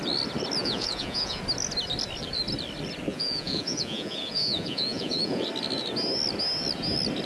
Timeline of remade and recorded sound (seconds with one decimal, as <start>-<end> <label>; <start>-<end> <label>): 0.0-0.6 recorded; 0.6-1.4 remade; 1.4-3.1 recorded; 3.1-5.4 remade; 5.4-7.3 recorded